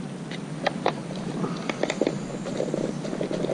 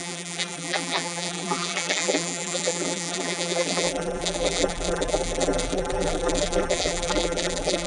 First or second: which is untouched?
first